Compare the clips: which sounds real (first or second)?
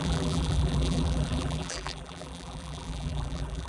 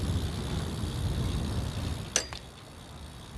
second